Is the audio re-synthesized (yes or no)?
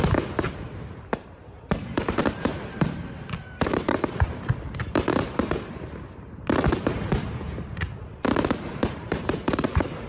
yes